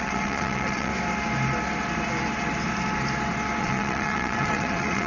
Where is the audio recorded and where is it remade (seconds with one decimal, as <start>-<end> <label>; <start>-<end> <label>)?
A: 0.0-0.9 remade; 0.9-3.6 recorded; 3.6-5.1 remade